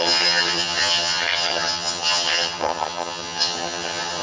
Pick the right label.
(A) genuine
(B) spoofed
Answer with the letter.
B